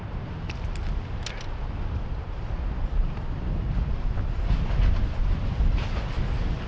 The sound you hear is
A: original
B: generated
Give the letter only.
A